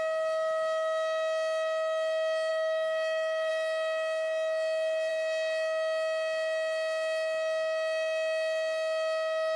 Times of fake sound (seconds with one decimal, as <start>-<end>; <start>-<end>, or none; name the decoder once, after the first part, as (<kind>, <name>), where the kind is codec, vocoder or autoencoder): 2.5-3.5 (autoencoder, DAC-VAE)

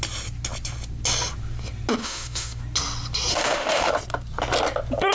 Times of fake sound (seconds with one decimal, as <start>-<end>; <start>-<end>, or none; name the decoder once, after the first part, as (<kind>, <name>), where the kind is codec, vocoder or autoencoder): 2.0-2.6 (autoencoder, DAC-VAE); 3.3-3.9

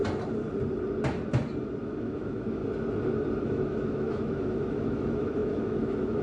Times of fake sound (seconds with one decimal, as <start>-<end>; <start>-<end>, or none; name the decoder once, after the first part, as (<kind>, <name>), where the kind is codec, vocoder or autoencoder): 1.8-2.6 (autoencoder, DAC-VAE); 3.4-6.2